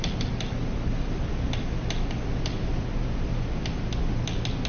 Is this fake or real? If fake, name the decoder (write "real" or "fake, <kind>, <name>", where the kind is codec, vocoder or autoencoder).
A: real